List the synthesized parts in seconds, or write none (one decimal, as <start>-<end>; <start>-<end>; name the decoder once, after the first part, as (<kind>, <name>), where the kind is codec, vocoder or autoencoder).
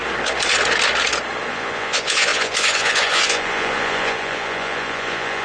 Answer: 1.5-5.4 (vocoder, Vocos)